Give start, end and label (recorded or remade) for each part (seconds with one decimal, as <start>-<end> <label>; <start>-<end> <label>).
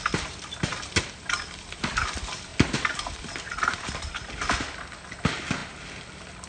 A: 0.0-6.5 recorded